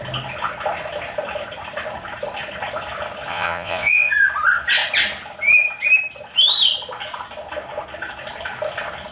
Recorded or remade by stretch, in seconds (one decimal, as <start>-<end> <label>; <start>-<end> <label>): 0.0-3.3 recorded; 3.3-4.1 remade; 4.1-9.1 recorded